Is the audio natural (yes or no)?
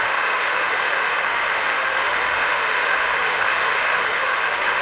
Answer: no